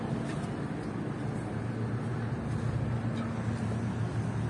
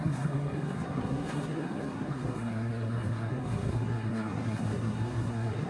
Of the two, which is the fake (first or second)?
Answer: second